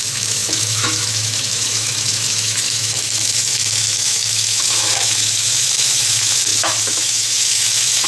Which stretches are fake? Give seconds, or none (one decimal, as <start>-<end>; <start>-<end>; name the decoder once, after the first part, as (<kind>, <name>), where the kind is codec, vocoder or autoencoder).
0.0-8.1 (autoencoder, DAC-VAE)